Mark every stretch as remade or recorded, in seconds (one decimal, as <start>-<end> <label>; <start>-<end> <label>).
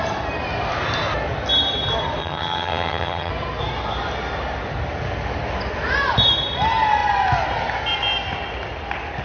0.0-2.2 recorded; 2.2-3.3 remade; 3.3-9.2 recorded